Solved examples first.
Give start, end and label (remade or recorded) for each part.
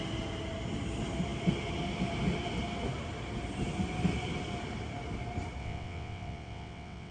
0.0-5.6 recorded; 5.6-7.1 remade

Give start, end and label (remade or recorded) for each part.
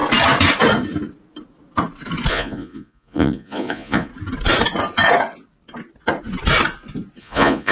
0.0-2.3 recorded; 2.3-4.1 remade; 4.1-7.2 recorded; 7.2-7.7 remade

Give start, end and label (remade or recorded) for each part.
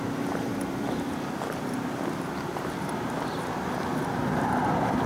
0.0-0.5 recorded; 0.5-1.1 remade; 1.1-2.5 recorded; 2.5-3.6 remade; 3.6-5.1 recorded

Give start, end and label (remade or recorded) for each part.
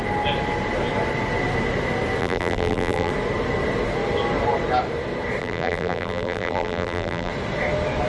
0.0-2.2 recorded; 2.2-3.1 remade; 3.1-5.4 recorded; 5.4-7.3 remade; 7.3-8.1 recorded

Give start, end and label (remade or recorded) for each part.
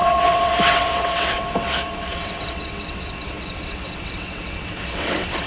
0.0-5.5 remade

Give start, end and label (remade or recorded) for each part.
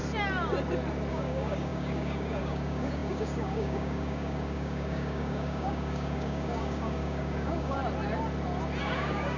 0.0-1.1 recorded; 1.1-7.8 remade; 7.8-8.8 recorded; 8.8-9.4 remade